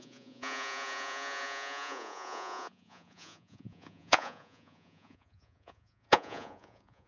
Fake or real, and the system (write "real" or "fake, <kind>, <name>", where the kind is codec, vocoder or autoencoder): fake, vocoder, Vocos